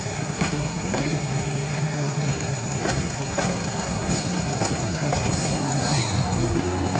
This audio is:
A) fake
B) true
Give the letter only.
A